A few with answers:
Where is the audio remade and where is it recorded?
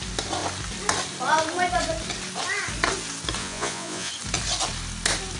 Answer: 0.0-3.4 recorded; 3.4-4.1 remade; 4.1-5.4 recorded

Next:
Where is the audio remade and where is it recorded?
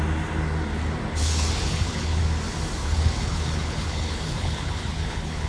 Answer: 0.0-1.2 recorded; 1.2-2.2 remade; 2.2-2.8 recorded; 2.8-5.5 remade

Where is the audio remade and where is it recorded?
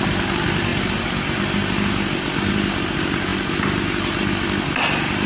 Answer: 0.0-5.3 recorded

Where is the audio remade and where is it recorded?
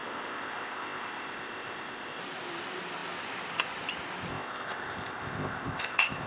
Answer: 0.0-2.2 remade; 2.2-4.3 recorded; 4.3-6.3 remade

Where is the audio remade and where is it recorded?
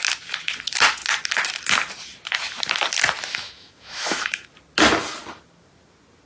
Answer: 0.0-3.3 recorded; 3.3-4.5 remade; 4.5-6.3 recorded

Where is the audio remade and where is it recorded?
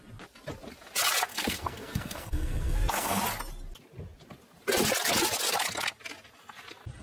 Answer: 0.0-1.3 recorded; 1.3-3.2 remade; 3.2-7.0 recorded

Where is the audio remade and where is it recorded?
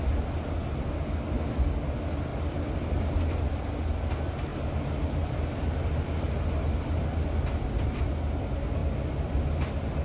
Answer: 0.0-2.3 recorded; 2.3-3.8 remade; 3.8-4.5 recorded; 4.5-8.0 remade; 8.0-8.8 recorded; 8.8-9.6 remade; 9.6-10.0 recorded